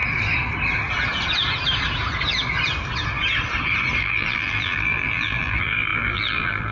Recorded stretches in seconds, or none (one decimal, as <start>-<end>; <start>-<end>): 0.0-4.0